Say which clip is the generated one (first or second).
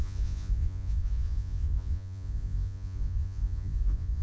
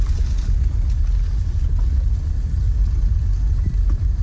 first